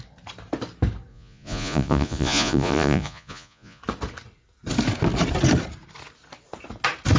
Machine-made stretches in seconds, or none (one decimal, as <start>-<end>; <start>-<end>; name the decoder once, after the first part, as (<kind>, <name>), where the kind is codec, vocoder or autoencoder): 1.1-3.8 (vocoder, Vocos)